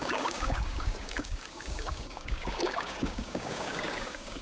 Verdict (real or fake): fake